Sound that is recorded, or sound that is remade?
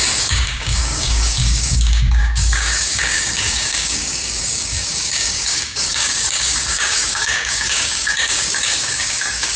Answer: remade